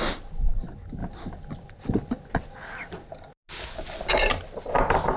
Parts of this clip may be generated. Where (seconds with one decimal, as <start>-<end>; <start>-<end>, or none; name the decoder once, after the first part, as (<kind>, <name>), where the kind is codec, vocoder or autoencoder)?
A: none